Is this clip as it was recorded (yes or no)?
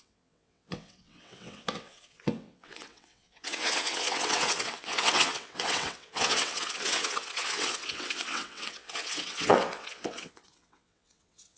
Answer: no